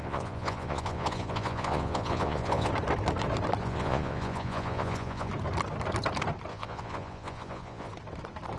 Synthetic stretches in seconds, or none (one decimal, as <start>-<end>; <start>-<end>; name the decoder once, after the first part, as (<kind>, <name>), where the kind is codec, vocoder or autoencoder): 0.0-2.7 (vocoder, Vocos); 3.6-5.3; 6.5-7.9